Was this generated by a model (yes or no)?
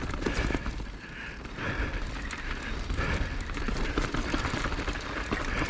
no